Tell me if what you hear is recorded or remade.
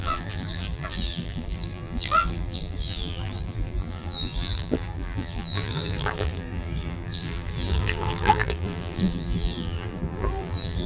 remade